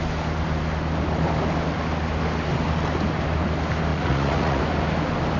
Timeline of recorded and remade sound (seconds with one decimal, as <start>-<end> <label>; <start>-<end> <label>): 0.0-3.9 recorded; 3.9-4.6 remade; 4.6-5.4 recorded